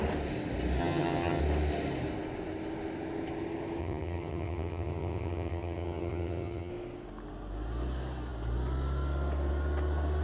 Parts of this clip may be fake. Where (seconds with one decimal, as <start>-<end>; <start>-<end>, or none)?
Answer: 0.8-1.4; 3.8-6.7

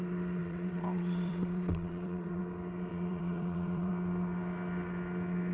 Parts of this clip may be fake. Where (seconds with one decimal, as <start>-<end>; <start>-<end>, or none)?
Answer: 0.4-2.4; 2.9-3.9

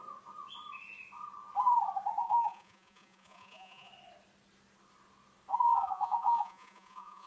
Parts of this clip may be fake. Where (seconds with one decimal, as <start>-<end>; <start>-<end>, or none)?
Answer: 2.2-3.9; 5.5-7.3

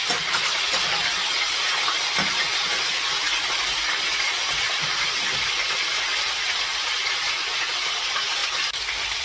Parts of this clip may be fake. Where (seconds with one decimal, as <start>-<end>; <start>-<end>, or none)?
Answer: 0.0-1.0; 4.6-9.2

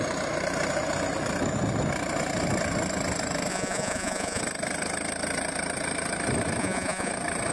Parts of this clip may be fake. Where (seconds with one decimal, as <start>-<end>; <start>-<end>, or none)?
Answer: 3.5-4.4; 6.6-7.1

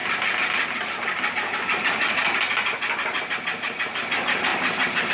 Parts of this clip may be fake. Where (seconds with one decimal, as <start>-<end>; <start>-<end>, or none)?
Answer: 4.5-5.1